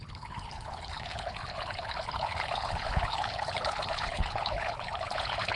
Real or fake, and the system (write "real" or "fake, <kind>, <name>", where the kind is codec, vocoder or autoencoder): fake, codec, HILCodec